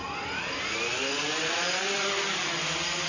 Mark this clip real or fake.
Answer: real